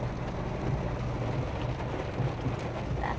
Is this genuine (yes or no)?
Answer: yes